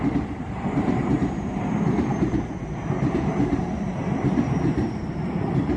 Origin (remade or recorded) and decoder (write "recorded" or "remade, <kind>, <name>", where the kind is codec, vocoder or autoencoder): remade, vocoder, BigVGAN v2